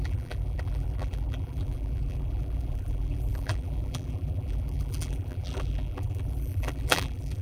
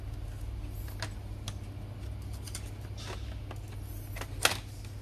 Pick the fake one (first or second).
first